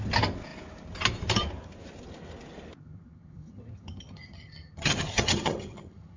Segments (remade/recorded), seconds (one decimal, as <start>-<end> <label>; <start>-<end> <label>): 0.0-2.8 recorded; 2.8-6.2 remade